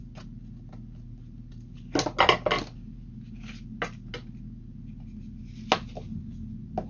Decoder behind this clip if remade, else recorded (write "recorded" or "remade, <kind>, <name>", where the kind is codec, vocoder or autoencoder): recorded